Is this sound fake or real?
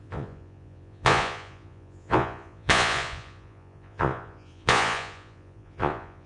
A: fake